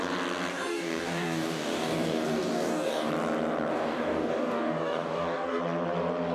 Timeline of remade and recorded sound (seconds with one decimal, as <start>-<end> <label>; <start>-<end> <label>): 0.0-0.5 recorded; 0.5-3.1 remade; 3.1-3.7 recorded; 3.7-5.6 remade; 5.6-6.3 recorded